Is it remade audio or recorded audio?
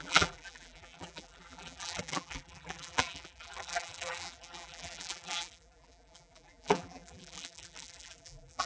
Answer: remade